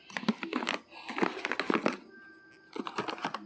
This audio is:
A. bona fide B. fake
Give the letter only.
A